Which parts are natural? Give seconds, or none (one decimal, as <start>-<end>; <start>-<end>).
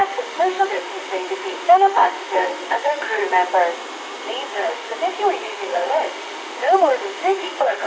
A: 3.2-4.5; 4.9-5.4